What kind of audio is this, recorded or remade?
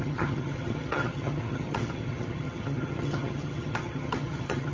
remade